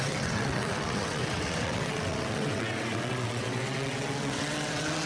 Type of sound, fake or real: fake